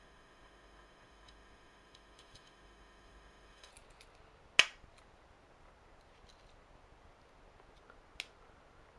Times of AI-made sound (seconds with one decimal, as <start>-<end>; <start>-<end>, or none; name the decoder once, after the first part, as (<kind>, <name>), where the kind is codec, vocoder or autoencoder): 0.0-3.7 (autoencoder, DAC-VAE)